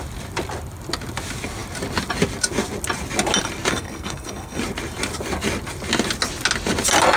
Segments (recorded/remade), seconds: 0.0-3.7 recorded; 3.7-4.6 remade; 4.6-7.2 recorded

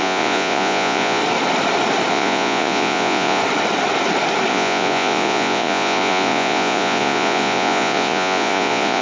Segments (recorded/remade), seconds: 0.0-1.2 remade; 1.2-2.1 recorded; 2.1-3.4 remade; 3.4-4.5 recorded; 4.5-9.0 remade

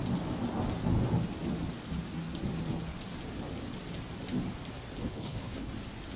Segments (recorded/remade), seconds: 0.0-5.0 recorded; 5.0-5.7 remade; 5.7-6.2 recorded

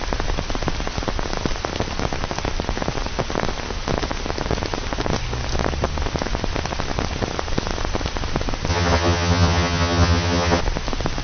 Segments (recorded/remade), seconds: 0.0-8.7 recorded; 8.7-10.6 remade; 10.6-11.2 recorded

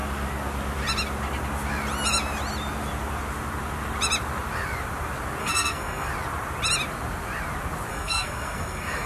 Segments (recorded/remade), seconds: 0.0-5.4 recorded; 5.4-6.1 remade; 6.1-7.9 recorded; 7.9-9.1 remade

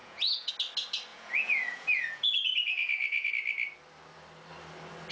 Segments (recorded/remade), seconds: 0.0-0.5 remade; 0.5-1.1 recorded; 1.1-3.3 remade; 3.3-5.1 recorded

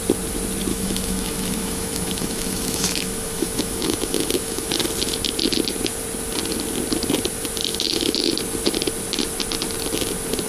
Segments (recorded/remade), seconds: 0.0-0.7 recorded; 0.7-4.7 remade; 4.7-7.7 recorded; 7.7-8.3 remade; 8.3-10.5 recorded